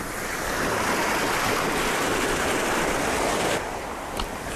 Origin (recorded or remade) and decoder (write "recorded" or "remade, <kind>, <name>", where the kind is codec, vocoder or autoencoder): recorded